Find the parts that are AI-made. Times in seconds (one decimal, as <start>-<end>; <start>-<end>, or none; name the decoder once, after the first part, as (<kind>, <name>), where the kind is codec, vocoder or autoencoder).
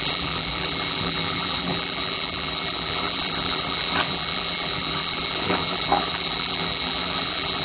0.0-7.6 (vocoder, BigVGAN v2)